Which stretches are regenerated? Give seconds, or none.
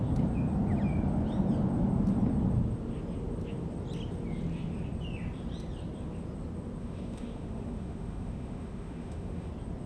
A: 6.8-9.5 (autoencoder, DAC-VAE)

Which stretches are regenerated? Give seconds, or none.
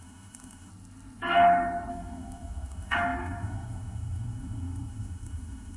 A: 0.0-0.7 (autoencoder, DAC-VAE); 1.9-5.8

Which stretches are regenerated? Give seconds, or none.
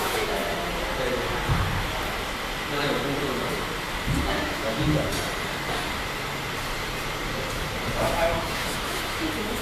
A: 0.0-0.4 (autoencoder, DAC-VAE); 4.2-5.1; 8.1-9.6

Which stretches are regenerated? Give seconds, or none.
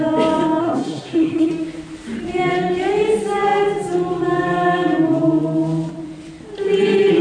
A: 0.6-1.5 (codec, SNAC)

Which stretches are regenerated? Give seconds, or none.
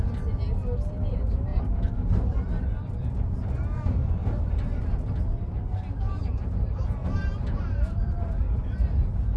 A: 1.5-4.8 (vocoder, BigVGAN v2); 7.0-8.4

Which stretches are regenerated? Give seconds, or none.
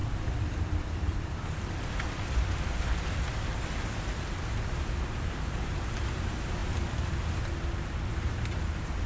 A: none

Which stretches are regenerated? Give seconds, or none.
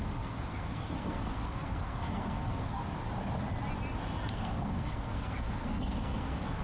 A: 0.0-2.8 (codec, SNAC); 4.3-6.6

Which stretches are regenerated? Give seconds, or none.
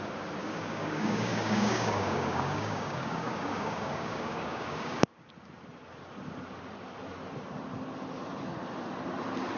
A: 0.4-5.3 (codec, DAC)